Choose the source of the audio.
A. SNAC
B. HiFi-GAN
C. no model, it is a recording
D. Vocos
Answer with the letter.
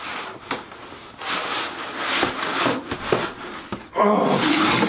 C